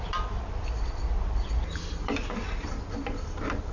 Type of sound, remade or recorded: recorded